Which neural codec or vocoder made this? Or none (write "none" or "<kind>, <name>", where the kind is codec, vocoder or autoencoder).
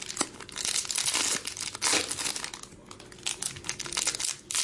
none